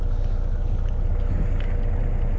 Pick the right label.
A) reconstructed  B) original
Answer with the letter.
B